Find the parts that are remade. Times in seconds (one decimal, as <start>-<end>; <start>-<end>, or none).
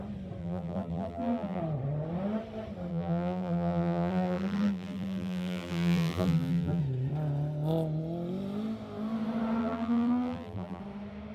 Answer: 0.4-1.6; 2.9-6.8; 9.6-10.8